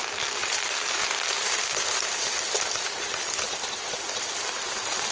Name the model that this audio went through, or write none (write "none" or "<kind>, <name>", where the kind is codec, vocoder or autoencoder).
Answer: vocoder, BigVGAN v2